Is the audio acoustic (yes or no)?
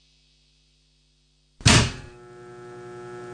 yes